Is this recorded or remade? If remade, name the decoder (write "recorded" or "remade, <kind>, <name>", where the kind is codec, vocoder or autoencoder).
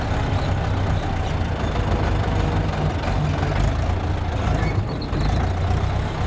recorded